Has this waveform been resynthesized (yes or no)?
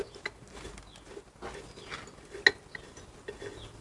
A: no